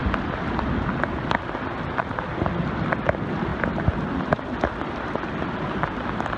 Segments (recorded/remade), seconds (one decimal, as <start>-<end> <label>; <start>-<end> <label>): 0.0-3.5 recorded; 3.5-5.1 remade; 5.1-6.4 recorded